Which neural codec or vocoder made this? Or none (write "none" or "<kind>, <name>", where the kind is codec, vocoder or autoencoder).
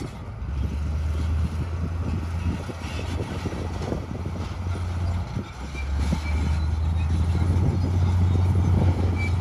none